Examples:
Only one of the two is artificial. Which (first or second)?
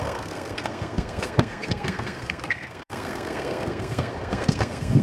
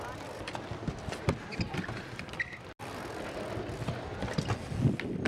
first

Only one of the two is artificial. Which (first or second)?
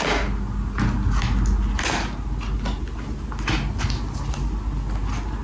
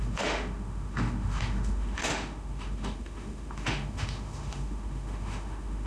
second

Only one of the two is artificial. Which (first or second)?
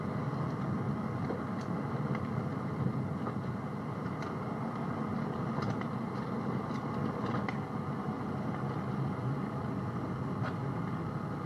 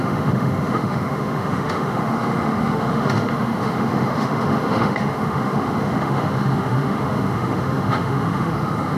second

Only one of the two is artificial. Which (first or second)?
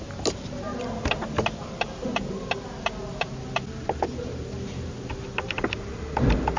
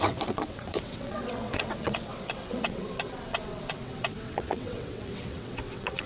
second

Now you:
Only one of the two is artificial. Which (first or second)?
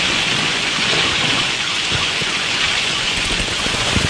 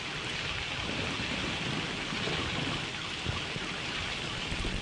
first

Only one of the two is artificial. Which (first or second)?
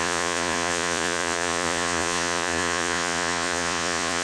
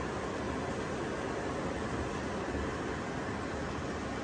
first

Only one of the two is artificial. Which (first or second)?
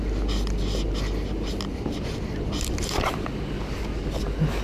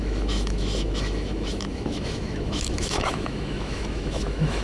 second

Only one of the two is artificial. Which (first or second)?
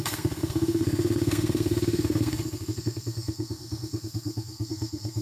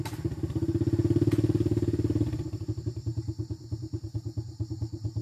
first